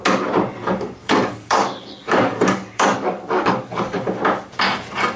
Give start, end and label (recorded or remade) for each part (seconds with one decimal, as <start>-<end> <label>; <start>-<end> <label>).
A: 0.0-1.0 recorded; 1.0-4.1 remade; 4.1-5.2 recorded